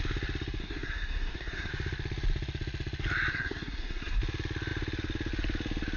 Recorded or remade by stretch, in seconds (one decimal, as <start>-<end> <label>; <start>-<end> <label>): 0.0-0.6 recorded; 0.6-1.7 remade; 1.7-3.3 recorded; 3.3-4.2 remade; 4.2-6.0 recorded